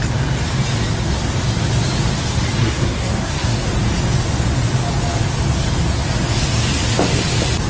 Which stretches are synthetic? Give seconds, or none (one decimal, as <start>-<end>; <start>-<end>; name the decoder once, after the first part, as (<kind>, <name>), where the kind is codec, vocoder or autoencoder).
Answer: 2.6-3.7 (codec, SNAC)